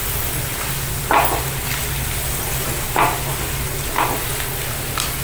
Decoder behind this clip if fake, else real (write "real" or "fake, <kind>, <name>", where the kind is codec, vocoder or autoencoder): real